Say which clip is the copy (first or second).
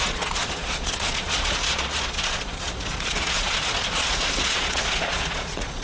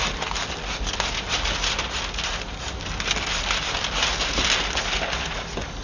first